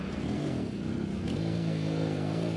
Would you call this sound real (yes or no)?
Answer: no